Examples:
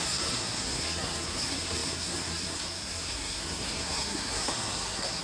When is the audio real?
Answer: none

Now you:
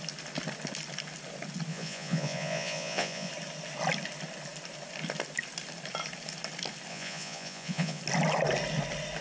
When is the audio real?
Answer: 0.0-1.7; 3.3-6.9; 8.0-9.2

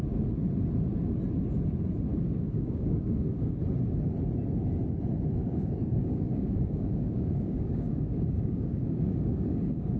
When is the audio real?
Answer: 0.0-2.1; 3.6-5.4

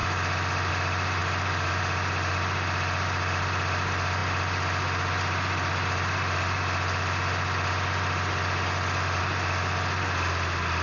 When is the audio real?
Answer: 0.0-10.8

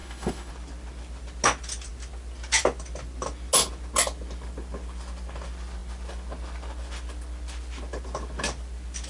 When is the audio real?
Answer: 0.5-9.1

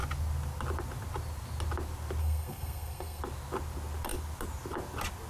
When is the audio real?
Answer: 0.0-2.2; 3.2-5.3

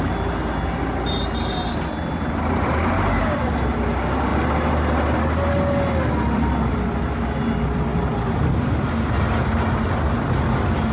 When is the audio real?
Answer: 0.0-10.9

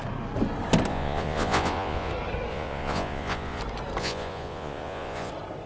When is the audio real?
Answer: 0.0-0.9; 2.1-2.5; 3.6-4.0; 5.3-5.7